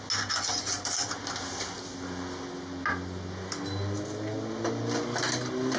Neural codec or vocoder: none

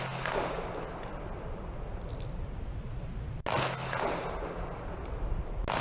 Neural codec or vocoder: none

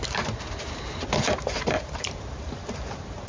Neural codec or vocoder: vocoder, BigVGAN v2